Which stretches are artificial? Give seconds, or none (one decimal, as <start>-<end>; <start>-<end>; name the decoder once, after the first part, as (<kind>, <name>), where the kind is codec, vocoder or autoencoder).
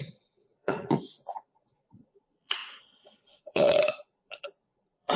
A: 0.0-5.2 (vocoder, Vocos)